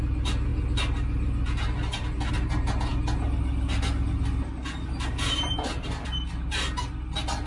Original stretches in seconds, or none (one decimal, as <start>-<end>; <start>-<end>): 0.0-7.5